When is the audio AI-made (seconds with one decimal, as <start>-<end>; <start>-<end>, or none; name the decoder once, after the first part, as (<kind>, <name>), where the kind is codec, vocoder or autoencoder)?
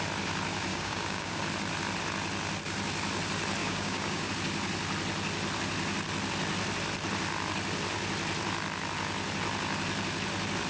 0.7-1.4 (codec, DAC); 3.6-4.3